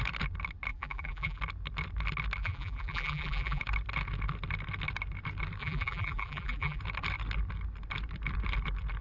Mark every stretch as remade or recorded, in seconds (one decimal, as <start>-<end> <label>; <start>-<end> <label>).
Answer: 0.0-0.7 recorded; 0.7-1.4 remade; 1.4-2.4 recorded; 2.4-3.6 remade; 3.6-5.6 recorded; 5.6-6.8 remade; 6.8-9.0 recorded